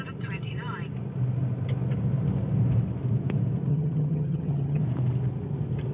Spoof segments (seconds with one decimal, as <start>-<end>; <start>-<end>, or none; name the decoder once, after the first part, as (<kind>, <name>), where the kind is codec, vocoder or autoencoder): 3.7-4.8 (vocoder, HiFi-GAN)